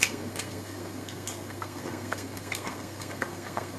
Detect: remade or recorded remade